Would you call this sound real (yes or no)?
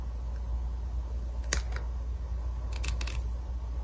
yes